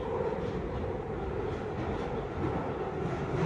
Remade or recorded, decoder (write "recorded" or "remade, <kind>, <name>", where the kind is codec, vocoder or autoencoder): recorded